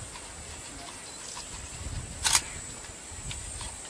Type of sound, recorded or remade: recorded